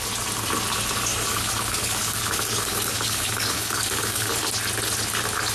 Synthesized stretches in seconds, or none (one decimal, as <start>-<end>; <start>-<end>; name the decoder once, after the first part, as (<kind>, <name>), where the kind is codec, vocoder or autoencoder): 1.1-4.3 (codec, DAC)